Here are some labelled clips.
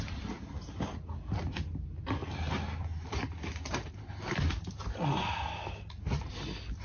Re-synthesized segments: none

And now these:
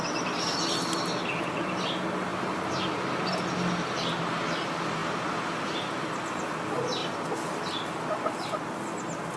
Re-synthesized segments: none

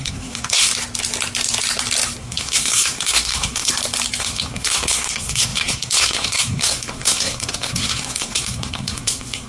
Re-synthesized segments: 0.0-0.7 (codec, SNAC); 2.2-3.7; 4.2-9.5

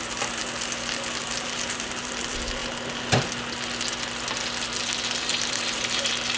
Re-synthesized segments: 0.0-0.4 (vocoder, BigVGAN v2); 1.2-2.6; 5.2-6.4

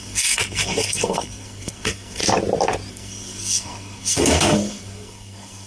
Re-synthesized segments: 0.0-2.2 (codec, SNAC); 2.9-5.7

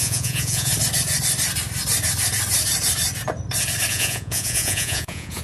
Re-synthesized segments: 0.0-0.7 (vocoder, Vocos); 3.9-5.4

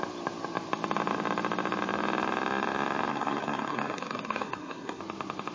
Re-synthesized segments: 3.1-5.0 (codec, SNAC)